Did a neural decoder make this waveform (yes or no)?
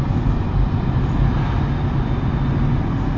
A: no